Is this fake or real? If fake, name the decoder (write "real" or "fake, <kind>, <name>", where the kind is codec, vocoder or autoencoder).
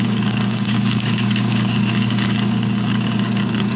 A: fake, codec, DAC